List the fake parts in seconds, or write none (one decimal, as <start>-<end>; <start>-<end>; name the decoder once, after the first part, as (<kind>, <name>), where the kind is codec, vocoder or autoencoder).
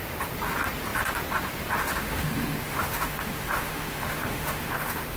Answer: 2.0-5.2 (autoencoder, DAC-VAE)